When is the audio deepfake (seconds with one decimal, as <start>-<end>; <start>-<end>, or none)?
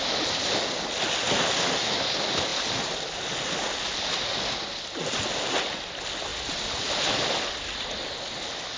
none